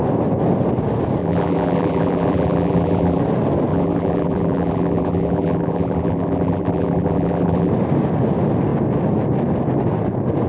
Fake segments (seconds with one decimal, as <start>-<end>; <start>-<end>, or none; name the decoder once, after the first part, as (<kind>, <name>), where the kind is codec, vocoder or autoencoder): 1.2-3.2 (vocoder, BigVGAN v2); 3.7-7.7